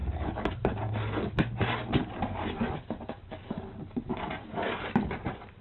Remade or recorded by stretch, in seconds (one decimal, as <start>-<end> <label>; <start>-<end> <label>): 0.0-0.8 remade; 0.8-4.1 recorded; 4.1-4.7 remade; 4.7-5.6 recorded